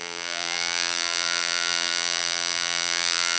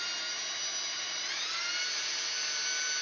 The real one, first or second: second